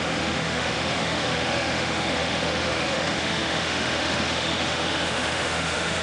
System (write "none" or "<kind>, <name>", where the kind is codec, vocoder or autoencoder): autoencoder, DAC-VAE